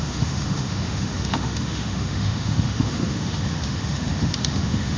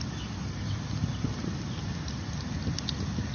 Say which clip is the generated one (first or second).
first